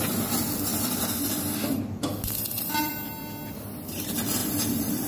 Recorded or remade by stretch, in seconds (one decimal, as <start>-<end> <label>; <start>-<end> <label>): 0.0-0.7 recorded; 0.7-2.9 remade; 2.9-4.4 recorded; 4.4-5.1 remade